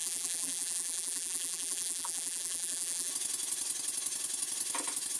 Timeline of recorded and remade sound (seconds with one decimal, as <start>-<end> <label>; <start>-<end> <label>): 0.0-3.1 remade; 3.1-5.2 recorded